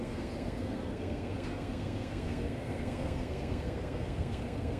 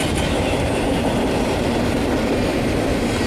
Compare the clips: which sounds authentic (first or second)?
second